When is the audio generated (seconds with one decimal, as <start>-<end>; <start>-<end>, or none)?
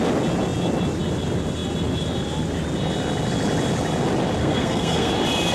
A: 4.4-5.1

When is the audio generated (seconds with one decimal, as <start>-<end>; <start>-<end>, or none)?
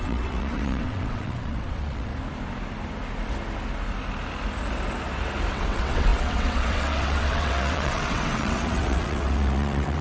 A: 0.0-2.1; 5.5-10.0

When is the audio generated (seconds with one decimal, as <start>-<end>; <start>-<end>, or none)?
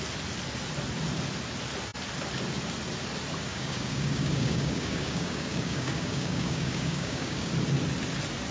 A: 3.5-7.5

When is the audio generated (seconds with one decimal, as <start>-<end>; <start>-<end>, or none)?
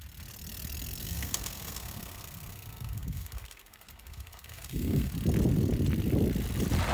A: 1.0-5.1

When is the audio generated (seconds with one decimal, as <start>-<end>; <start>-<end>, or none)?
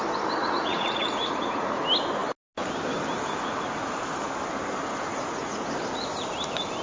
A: 0.4-1.8; 5.1-5.7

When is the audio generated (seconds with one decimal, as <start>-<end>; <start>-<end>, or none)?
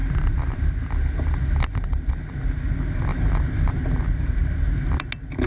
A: 0.0-0.6; 3.1-3.8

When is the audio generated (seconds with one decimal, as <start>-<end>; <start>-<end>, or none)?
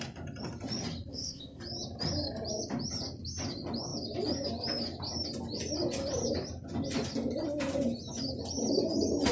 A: 1.1-1.6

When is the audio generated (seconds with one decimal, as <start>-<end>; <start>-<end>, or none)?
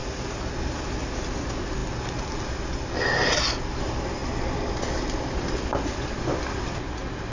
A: none